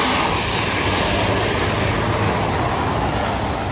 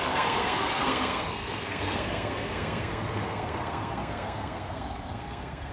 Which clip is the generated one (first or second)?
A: second